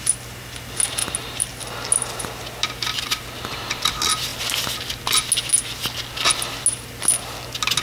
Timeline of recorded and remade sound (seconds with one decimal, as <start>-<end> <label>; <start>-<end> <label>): 0.0-7.8 recorded